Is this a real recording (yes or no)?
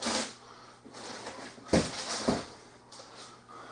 yes